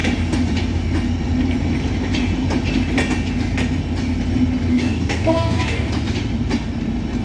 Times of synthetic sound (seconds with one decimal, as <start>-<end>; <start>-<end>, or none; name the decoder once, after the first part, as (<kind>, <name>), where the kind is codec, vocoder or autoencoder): 4.7-5.9 (codec, DAC)